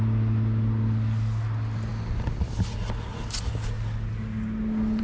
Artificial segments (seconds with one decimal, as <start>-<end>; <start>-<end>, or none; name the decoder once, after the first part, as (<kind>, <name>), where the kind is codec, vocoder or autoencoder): none